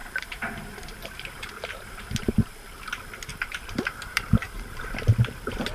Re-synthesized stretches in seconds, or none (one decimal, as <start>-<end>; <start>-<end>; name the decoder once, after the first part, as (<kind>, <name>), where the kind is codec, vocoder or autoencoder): 0.0-2.5 (vocoder, BigVGAN v2); 3.3-4.8